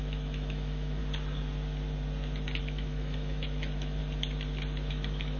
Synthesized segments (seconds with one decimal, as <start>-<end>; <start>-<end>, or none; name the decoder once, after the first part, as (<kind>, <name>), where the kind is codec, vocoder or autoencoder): 0.0-1.0 (autoencoder, DAC-VAE); 2.6-4.0; 4.9-5.4